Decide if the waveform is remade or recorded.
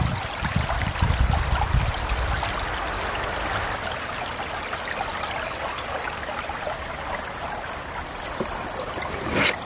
recorded